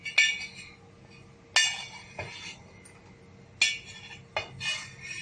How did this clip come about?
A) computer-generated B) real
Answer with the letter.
B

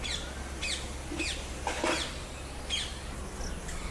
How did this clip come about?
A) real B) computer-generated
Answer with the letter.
A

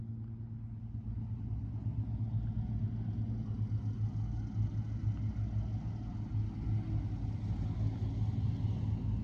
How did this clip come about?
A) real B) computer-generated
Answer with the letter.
A